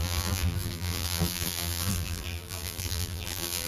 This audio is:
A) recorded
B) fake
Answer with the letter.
B